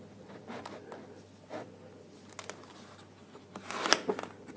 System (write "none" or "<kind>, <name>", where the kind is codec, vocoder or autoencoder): none